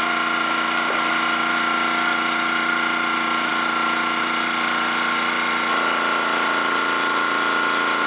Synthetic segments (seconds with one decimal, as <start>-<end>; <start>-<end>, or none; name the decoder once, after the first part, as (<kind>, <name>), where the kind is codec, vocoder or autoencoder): none